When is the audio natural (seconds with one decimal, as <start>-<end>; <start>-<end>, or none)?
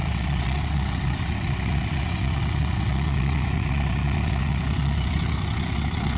none